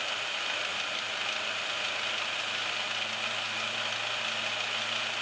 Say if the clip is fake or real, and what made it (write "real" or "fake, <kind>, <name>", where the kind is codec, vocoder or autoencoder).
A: real